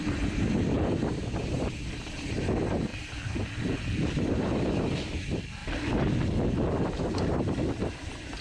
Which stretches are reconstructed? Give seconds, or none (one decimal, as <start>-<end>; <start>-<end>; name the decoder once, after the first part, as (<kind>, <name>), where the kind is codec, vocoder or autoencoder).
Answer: 0.0-5.6 (vocoder, BigVGAN v2); 6.8-8.4